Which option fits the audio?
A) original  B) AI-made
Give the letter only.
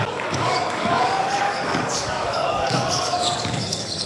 B